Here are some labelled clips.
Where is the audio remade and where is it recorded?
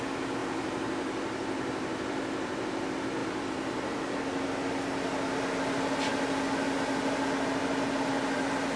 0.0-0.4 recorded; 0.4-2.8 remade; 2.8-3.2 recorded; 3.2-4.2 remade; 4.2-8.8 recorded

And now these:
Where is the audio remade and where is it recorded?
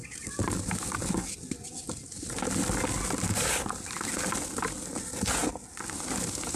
0.0-6.6 recorded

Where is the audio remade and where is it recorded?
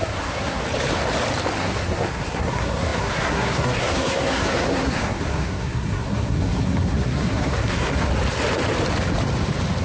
0.0-0.6 remade; 0.6-1.6 recorded; 1.6-8.1 remade; 8.1-9.8 recorded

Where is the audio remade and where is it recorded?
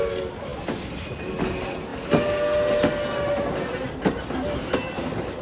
0.0-5.4 recorded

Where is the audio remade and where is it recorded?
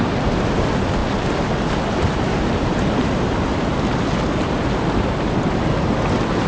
0.0-6.5 recorded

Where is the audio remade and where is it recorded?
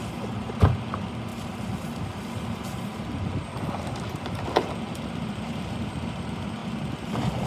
0.0-7.5 recorded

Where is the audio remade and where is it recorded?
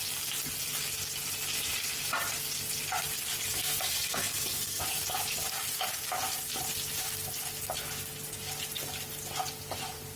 0.0-3.5 recorded; 3.5-4.8 remade; 4.8-10.2 recorded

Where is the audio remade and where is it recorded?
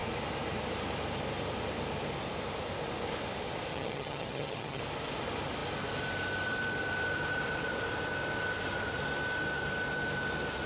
0.0-3.7 recorded; 3.7-4.8 remade; 4.8-10.7 recorded